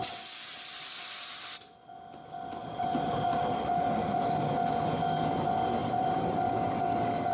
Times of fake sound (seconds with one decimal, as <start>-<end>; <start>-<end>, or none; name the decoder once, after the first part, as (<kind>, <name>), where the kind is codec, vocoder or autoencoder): 2.6-4.5 (vocoder, BigVGAN v2); 5.8-6.5